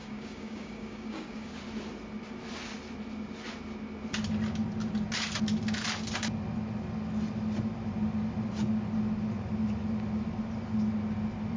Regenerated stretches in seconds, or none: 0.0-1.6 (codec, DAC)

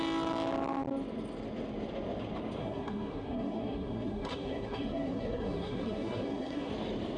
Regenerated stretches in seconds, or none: 2.6-6.7 (codec, SNAC)

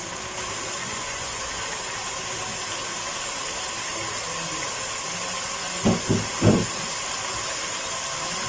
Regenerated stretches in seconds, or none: 0.8-1.7 (vocoder, Vocos)